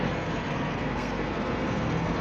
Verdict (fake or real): fake